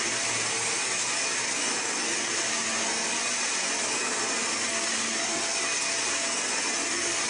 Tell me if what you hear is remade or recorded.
recorded